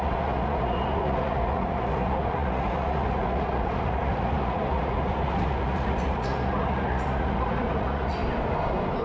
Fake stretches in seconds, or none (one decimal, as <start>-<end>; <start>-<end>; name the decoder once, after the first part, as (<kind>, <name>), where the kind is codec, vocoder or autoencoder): 0.0-8.2 (vocoder, Vocos)